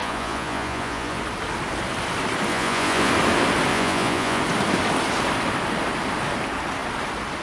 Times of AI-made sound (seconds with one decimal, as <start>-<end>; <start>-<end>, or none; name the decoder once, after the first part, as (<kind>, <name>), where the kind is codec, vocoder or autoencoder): 0.0-1.2 (vocoder, Vocos); 2.5-3.1; 3.7-4.4